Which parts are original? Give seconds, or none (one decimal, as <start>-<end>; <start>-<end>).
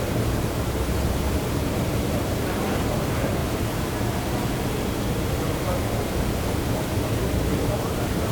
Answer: 3.4-7.2